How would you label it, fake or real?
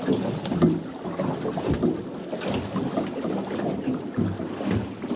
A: real